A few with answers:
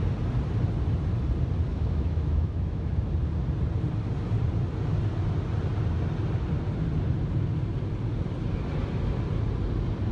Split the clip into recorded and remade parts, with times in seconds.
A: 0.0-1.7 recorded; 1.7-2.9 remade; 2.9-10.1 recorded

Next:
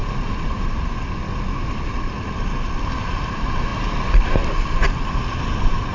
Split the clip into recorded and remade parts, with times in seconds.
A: 0.0-5.9 recorded

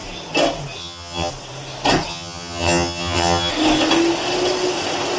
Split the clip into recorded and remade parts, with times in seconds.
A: 0.0-0.8 recorded; 0.8-1.3 remade; 1.3-2.1 recorded; 2.1-3.5 remade; 3.5-5.2 recorded